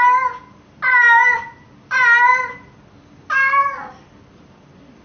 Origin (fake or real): real